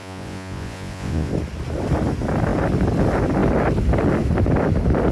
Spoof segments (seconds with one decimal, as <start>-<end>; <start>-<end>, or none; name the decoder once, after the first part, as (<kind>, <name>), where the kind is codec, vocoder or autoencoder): 0.0-1.3 (vocoder, Vocos)